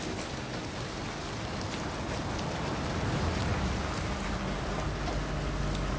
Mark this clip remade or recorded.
recorded